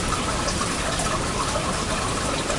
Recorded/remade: remade